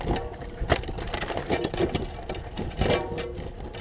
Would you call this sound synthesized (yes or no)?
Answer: no